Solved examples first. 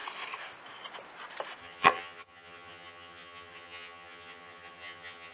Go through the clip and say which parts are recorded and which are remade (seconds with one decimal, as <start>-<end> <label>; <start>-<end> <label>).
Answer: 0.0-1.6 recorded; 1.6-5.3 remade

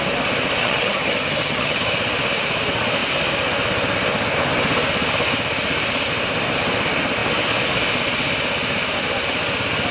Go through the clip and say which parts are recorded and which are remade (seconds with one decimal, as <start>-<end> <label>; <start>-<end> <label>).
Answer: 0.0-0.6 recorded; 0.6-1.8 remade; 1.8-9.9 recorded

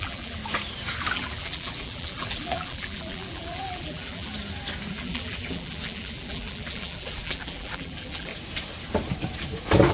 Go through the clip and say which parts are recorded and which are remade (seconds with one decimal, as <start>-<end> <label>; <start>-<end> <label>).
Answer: 0.0-0.4 remade; 0.4-1.1 recorded; 1.1-4.3 remade; 4.3-4.9 recorded; 4.9-8.3 remade; 8.3-9.9 recorded